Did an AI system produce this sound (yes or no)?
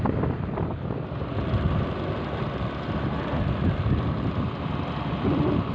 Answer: no